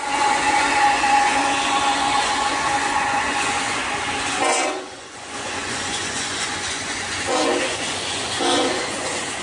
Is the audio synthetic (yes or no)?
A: yes